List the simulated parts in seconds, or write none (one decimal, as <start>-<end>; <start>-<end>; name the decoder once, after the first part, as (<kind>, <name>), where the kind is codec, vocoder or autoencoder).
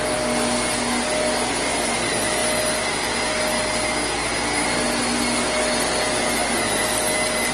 none